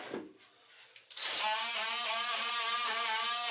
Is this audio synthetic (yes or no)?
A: no